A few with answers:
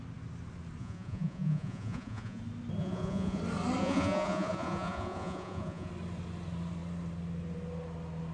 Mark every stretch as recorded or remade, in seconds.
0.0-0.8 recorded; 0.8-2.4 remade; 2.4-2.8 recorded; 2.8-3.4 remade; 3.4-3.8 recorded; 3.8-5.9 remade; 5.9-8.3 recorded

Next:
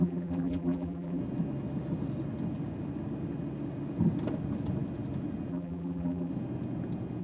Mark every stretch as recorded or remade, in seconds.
0.0-1.2 remade; 1.2-5.5 recorded; 5.5-6.3 remade; 6.3-7.2 recorded

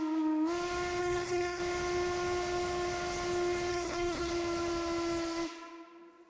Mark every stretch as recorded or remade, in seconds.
0.0-1.0 recorded; 1.0-1.6 remade; 1.6-3.7 recorded; 3.7-4.3 remade; 4.3-6.3 recorded

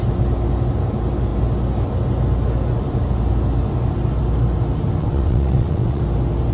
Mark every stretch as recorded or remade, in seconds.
0.0-5.0 recorded; 5.0-6.0 remade; 6.0-6.5 recorded

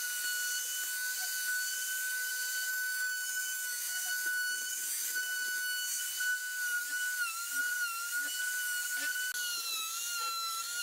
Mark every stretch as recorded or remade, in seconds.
0.0-2.7 recorded; 2.7-6.0 remade; 6.0-9.8 recorded; 9.8-10.8 remade

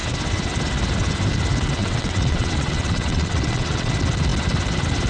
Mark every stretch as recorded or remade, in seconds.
0.0-1.8 recorded; 1.8-3.9 remade; 3.9-5.1 recorded

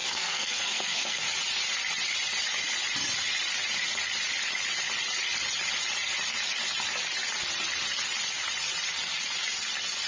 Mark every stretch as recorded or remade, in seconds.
0.0-1.2 remade; 1.2-10.1 recorded